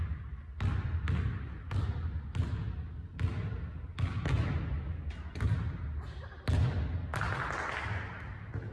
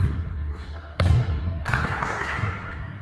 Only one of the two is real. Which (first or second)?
first